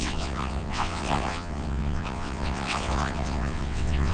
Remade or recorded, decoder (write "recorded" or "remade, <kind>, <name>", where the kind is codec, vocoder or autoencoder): remade, vocoder, WaveNeXt